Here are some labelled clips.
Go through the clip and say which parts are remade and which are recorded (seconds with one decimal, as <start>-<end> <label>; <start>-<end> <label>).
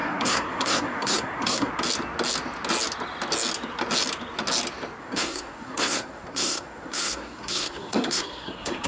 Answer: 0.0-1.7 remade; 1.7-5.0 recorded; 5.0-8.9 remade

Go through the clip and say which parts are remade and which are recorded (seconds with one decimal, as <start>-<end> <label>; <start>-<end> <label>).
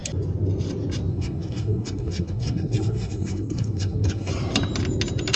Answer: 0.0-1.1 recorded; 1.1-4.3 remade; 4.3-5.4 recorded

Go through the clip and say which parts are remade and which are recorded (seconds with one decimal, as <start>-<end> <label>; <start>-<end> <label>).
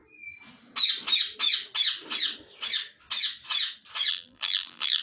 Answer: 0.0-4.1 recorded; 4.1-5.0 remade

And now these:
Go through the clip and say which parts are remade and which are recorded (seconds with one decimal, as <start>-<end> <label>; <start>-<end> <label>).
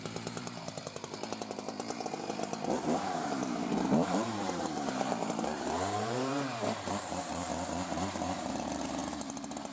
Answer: 0.0-9.0 remade; 9.0-9.7 recorded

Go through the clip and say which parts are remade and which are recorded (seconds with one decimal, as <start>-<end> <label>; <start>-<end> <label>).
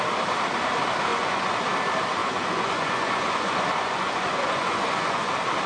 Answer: 0.0-1.1 recorded; 1.1-1.6 remade; 1.6-2.2 recorded; 2.2-5.3 remade; 5.3-5.7 recorded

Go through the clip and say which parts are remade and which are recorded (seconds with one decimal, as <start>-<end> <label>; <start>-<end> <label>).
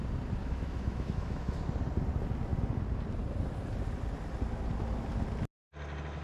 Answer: 0.0-0.4 recorded; 0.4-1.6 remade; 1.6-6.2 recorded